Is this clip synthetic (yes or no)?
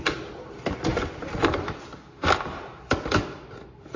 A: no